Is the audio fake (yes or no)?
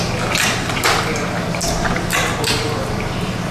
no